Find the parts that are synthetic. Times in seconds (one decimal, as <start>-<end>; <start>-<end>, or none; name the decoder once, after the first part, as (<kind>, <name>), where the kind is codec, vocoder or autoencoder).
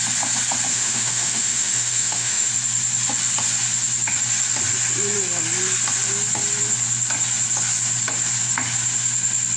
0.7-2.5 (autoencoder, DAC-VAE)